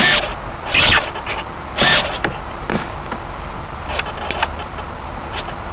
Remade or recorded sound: recorded